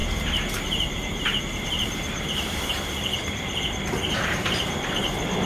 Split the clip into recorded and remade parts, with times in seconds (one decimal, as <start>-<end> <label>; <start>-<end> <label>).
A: 0.0-5.5 remade